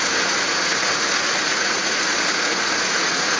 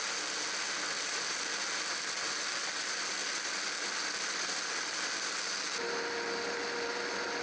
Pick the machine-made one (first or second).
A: first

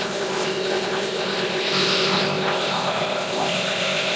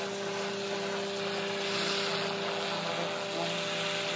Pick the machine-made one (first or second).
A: first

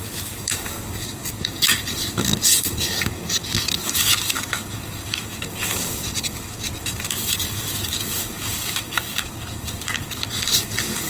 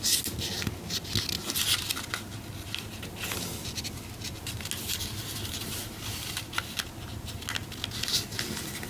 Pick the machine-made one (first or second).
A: first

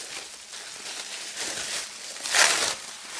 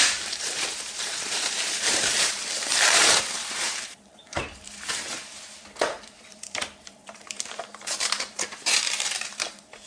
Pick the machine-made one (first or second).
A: second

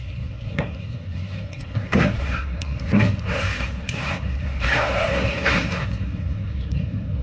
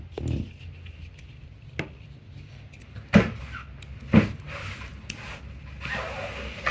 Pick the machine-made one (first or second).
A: first